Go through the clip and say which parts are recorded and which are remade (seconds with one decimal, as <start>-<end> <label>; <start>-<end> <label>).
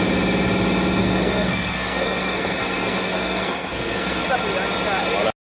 0.0-1.0 recorded; 1.0-4.2 remade; 4.2-5.4 recorded